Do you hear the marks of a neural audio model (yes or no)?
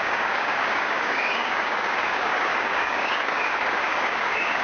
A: yes